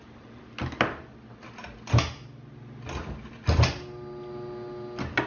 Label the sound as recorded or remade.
recorded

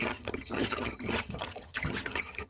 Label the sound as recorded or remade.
remade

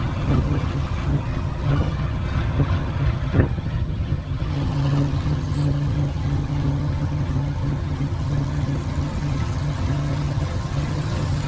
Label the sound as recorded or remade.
remade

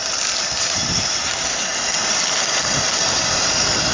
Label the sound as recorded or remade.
recorded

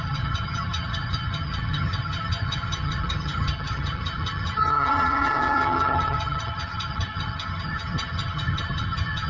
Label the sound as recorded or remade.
remade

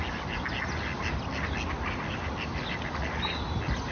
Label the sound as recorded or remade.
recorded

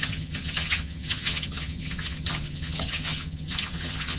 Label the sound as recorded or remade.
remade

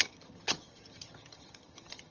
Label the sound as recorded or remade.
remade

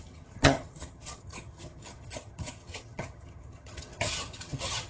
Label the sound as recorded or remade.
remade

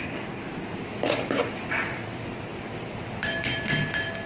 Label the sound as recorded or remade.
recorded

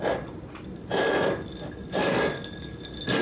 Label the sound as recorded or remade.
recorded